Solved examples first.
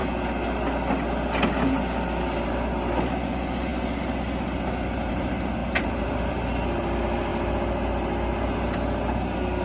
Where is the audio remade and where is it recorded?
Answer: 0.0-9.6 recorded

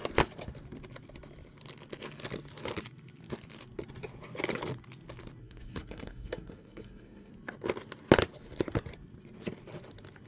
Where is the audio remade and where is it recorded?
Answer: 0.0-5.4 recorded; 5.4-7.3 remade; 7.3-10.3 recorded

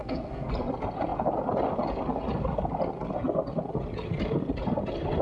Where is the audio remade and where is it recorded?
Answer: 0.0-0.5 remade; 0.5-5.2 recorded

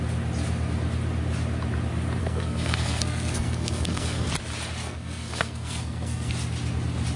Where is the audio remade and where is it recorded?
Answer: 0.0-2.2 recorded; 2.2-4.3 remade; 4.3-4.8 recorded; 4.8-6.3 remade; 6.3-7.2 recorded

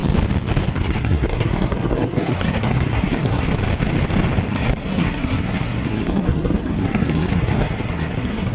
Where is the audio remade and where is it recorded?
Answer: 0.0-0.7 recorded; 0.7-3.5 remade; 3.5-4.5 recorded; 4.5-8.5 remade

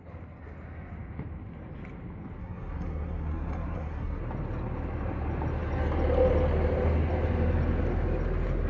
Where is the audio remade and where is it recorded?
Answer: 0.0-2.4 recorded; 2.4-4.2 remade; 4.2-8.7 recorded

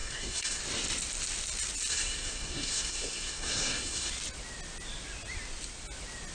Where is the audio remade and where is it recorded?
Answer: 0.0-0.6 remade; 0.6-1.9 recorded; 1.9-4.1 remade; 4.1-6.3 recorded

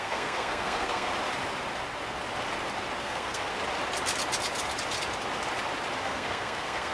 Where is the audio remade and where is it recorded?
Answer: 0.0-1.1 remade; 1.1-3.0 recorded; 3.0-3.5 remade; 3.5-6.0 recorded; 6.0-6.9 remade